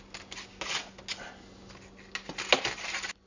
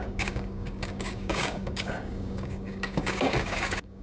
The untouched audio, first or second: first